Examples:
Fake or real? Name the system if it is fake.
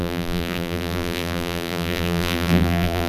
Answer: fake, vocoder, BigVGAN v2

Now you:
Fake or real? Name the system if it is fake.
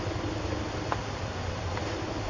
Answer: real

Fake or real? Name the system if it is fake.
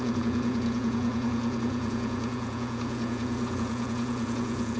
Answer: fake, vocoder, Vocos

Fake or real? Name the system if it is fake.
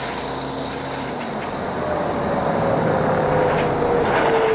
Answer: real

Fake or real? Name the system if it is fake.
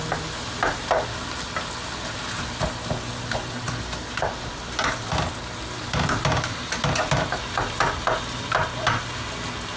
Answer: real